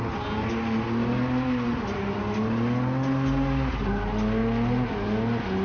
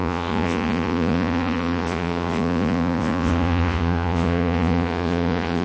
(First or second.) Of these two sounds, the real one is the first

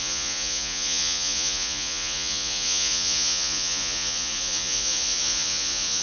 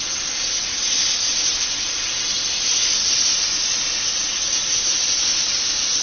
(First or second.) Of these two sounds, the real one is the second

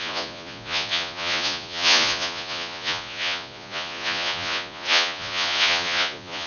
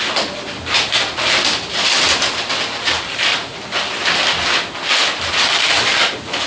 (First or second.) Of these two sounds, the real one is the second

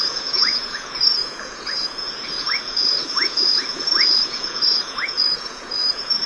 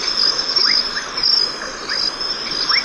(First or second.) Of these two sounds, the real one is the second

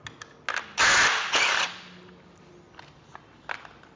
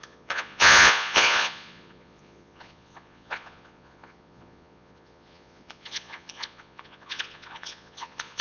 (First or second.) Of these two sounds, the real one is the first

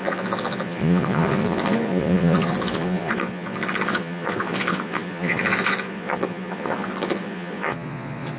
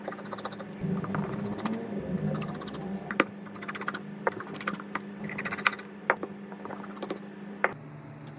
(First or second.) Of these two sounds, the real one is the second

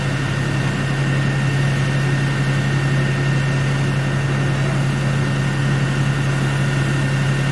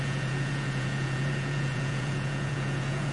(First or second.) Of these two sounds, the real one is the first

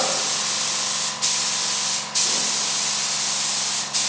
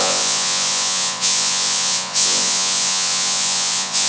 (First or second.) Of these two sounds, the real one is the first